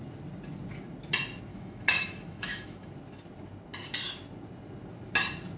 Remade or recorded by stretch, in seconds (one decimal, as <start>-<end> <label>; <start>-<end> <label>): 0.0-1.5 recorded; 1.5-2.9 remade; 2.9-5.6 recorded